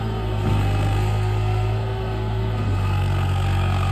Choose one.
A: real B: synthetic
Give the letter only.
B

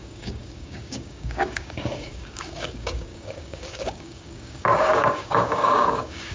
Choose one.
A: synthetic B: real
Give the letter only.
A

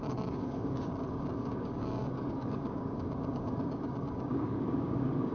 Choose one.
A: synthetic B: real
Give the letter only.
A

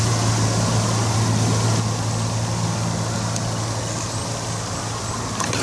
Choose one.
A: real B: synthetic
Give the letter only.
A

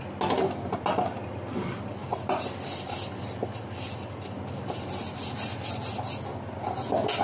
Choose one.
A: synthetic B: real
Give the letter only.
B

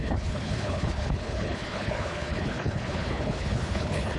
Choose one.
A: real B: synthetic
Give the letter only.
B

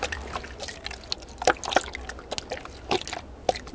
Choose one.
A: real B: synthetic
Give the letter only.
A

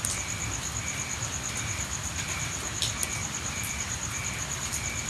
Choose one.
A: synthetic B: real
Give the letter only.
B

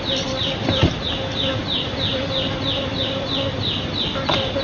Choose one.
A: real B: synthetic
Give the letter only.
A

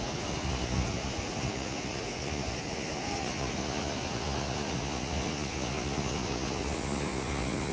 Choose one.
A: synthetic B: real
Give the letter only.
A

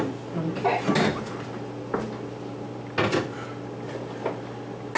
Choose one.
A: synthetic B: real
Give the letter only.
B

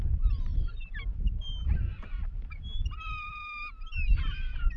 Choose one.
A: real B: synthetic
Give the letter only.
B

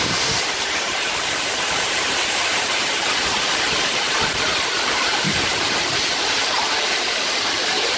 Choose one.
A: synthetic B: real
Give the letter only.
A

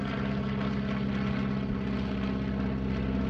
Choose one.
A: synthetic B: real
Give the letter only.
B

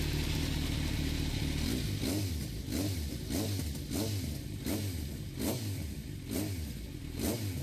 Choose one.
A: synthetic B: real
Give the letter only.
B